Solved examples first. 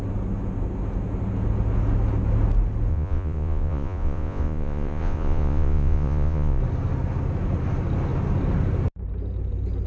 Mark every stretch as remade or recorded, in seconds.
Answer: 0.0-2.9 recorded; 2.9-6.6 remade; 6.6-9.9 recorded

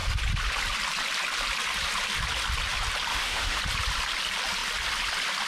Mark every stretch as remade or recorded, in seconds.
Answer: 0.0-3.1 recorded; 3.1-3.6 remade; 3.6-5.5 recorded

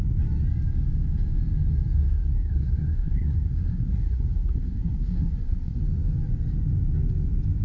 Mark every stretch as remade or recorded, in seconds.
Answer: 0.0-2.0 recorded; 2.0-5.8 remade; 5.8-7.6 recorded

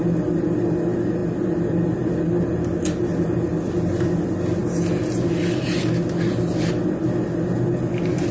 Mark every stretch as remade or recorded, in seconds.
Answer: 0.0-8.3 recorded

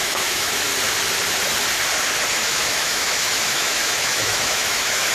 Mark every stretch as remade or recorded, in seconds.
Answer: 0.0-0.7 remade; 0.7-2.3 recorded; 2.3-5.1 remade

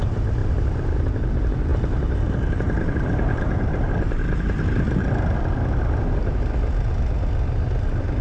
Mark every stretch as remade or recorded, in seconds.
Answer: 0.0-0.4 recorded; 0.4-1.0 remade; 1.0-1.7 recorded; 1.7-5.1 remade; 5.1-8.2 recorded